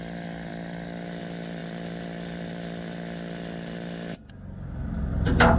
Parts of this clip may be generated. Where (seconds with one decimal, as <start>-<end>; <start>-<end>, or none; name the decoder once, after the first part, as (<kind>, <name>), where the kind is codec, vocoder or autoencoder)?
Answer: none